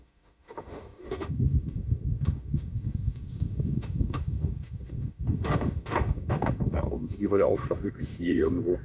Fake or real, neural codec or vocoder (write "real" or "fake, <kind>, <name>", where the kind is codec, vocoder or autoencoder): fake, autoencoder, DAC-VAE